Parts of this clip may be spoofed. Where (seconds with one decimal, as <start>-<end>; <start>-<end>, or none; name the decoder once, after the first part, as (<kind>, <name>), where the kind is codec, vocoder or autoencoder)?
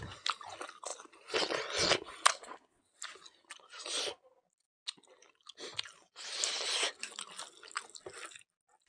2.3-2.8 (codec, SNAC)